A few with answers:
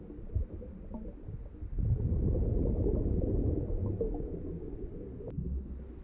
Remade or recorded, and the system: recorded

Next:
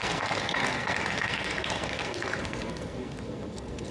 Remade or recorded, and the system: remade, codec, SNAC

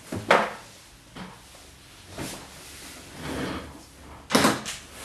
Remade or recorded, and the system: recorded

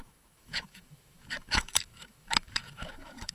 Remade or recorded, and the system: remade, autoencoder, DAC-VAE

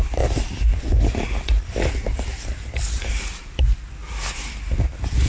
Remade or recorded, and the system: recorded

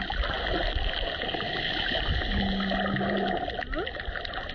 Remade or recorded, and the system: recorded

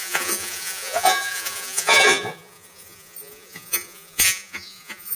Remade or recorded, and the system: remade, vocoder, Vocos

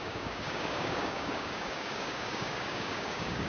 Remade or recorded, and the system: remade, codec, DAC